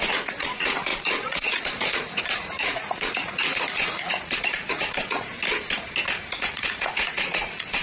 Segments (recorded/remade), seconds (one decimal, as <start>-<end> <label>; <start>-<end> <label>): 0.0-5.3 remade; 5.3-6.3 recorded; 6.3-7.8 remade